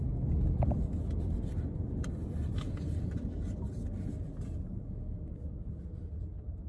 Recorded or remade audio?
recorded